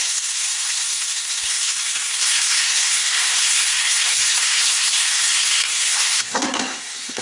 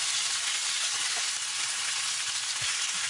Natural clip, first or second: second